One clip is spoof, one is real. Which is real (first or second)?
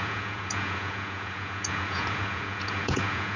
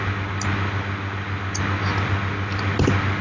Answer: second